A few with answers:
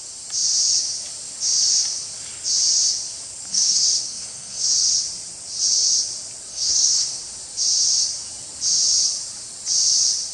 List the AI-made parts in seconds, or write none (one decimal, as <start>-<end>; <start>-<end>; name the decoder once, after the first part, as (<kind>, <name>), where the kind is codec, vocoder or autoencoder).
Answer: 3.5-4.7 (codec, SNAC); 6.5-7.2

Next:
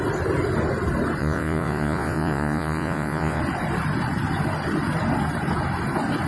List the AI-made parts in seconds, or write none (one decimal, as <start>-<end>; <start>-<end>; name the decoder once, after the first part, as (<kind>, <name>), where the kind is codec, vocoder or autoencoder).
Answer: 1.2-3.4 (vocoder, Vocos)

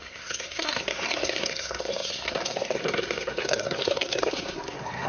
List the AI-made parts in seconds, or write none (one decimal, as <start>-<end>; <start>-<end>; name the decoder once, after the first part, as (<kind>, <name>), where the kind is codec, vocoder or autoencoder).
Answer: 0.0-5.1 (codec, SNAC)

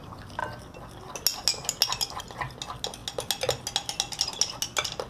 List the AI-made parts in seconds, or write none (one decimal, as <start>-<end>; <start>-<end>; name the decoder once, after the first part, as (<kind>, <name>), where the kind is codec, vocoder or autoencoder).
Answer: none

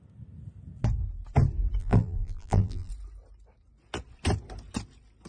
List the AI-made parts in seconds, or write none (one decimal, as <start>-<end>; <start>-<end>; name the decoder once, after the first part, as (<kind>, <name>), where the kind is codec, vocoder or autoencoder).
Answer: 1.8-2.9 (vocoder, BigVGAN v2)

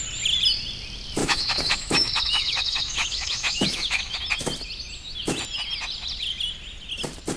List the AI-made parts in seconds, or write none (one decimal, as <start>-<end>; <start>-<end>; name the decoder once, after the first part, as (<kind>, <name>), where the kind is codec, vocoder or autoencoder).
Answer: 1.2-4.2 (autoencoder, DAC-VAE)

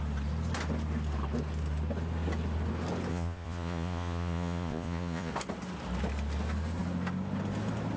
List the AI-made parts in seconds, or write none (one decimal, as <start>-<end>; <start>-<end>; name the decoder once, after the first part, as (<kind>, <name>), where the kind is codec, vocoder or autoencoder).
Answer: 3.1-5.3 (vocoder, Vocos)